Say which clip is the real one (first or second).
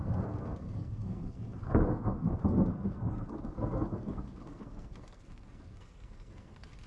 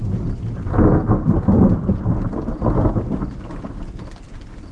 second